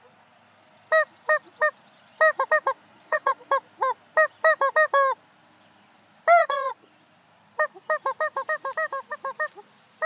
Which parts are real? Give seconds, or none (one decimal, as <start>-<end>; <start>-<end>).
0.0-2.9; 3.5-6.4; 6.9-10.1